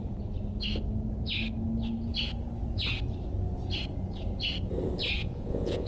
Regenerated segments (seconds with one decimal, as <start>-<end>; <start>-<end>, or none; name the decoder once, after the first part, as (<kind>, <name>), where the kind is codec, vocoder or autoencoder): 5.2-5.9 (vocoder, Vocos)